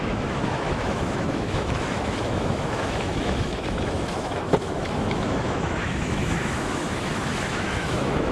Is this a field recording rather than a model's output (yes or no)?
no